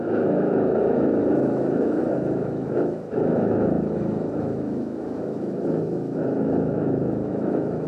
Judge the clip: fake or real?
fake